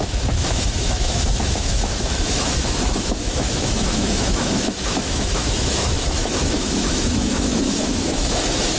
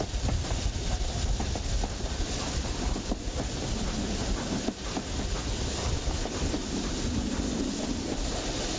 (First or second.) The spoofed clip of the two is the first